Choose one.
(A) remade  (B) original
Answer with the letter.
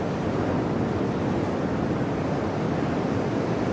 B